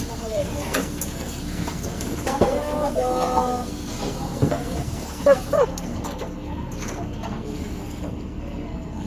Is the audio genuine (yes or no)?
no